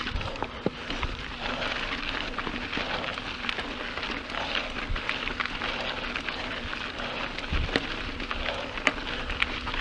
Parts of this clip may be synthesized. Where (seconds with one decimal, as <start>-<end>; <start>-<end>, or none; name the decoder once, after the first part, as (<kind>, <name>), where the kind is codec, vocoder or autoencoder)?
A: none